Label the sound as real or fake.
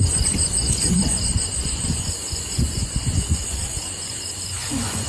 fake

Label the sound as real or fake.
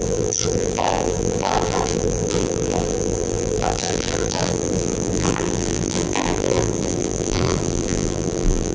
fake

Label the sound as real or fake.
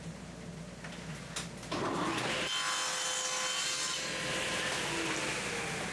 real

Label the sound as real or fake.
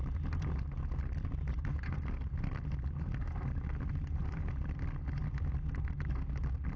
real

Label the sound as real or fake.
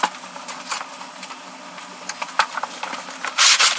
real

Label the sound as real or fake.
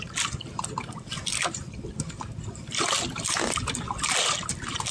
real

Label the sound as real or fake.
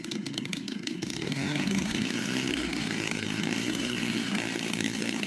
fake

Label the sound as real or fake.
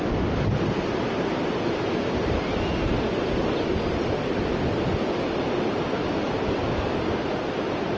real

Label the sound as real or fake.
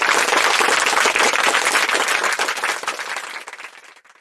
real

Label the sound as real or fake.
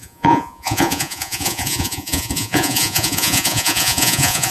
fake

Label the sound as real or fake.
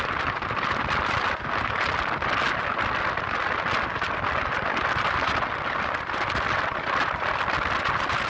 real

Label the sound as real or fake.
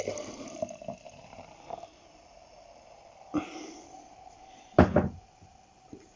real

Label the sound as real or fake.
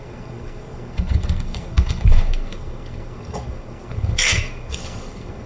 fake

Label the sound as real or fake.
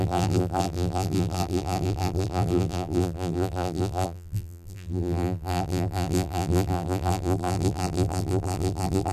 fake